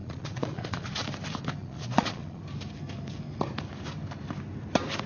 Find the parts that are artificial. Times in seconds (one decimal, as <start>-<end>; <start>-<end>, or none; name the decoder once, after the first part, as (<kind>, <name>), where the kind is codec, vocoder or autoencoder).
0.0-0.9 (vocoder, Vocos); 1.6-2.4